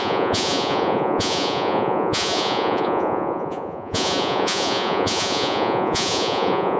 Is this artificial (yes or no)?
yes